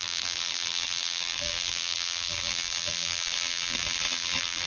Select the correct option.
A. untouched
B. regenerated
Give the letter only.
B